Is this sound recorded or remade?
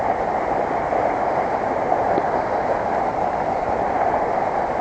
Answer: recorded